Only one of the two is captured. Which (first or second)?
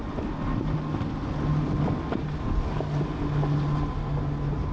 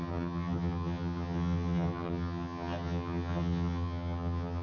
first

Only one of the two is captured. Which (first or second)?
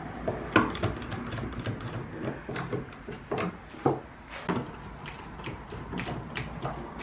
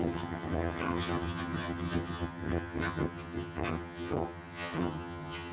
first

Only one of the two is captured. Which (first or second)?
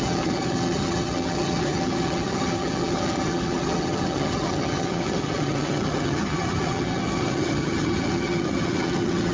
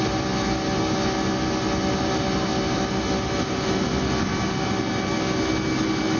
second